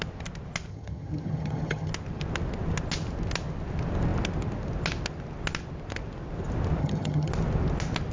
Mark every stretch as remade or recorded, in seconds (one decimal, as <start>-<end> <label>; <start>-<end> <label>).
0.0-0.7 recorded; 0.7-1.9 remade; 1.9-6.8 recorded; 6.8-7.3 remade; 7.3-8.1 recorded